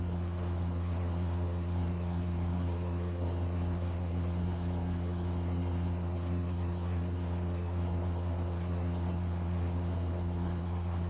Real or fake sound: fake